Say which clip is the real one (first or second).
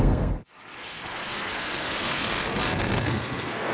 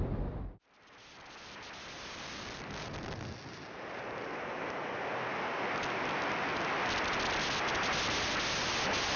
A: second